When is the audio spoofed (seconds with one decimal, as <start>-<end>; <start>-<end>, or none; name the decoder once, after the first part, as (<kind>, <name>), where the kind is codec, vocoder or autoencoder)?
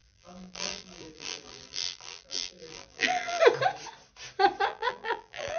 0.0-3.4 (vocoder, BigVGAN v2); 4.7-5.6